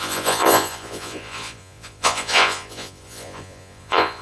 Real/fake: fake